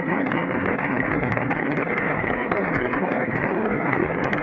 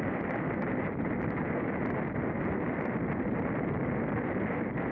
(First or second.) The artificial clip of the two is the first